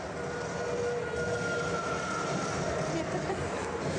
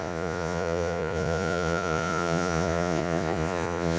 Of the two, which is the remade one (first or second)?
second